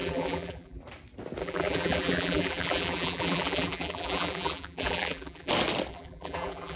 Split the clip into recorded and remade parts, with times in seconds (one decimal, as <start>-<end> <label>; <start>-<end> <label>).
0.0-0.8 remade; 0.8-1.4 recorded; 1.4-5.5 remade; 5.5-5.9 recorded; 5.9-6.8 remade